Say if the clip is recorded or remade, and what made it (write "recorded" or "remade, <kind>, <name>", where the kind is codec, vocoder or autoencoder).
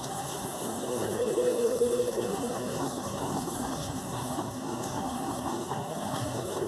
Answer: remade, codec, SNAC